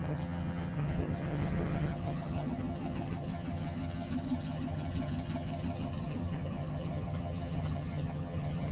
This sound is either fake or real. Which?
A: fake